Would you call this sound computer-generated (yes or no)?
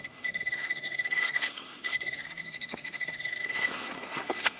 yes